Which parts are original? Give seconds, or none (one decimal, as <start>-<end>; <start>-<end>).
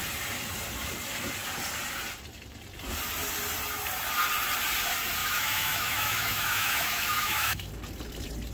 0.0-5.2; 7.7-8.5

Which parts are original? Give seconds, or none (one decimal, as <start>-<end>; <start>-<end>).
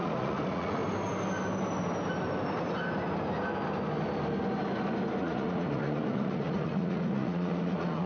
0.8-5.2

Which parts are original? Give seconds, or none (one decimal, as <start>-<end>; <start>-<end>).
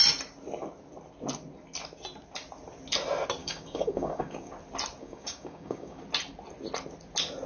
0.0-3.4; 4.5-5.0; 6.0-7.5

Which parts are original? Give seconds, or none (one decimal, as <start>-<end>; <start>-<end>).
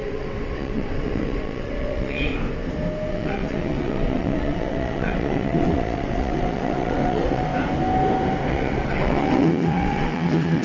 2.3-3.1; 7.5-8.5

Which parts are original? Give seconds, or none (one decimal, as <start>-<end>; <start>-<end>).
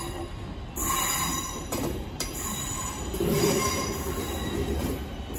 0.0-1.3; 4.5-5.4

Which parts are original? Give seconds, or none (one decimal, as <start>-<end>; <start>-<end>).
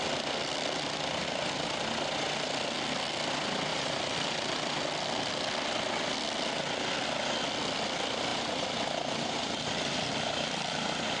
0.0-3.7; 4.8-8.3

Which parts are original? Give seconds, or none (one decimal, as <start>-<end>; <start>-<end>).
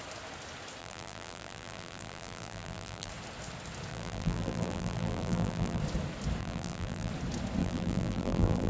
0.0-0.8; 3.1-3.9; 5.8-6.4; 7.1-7.6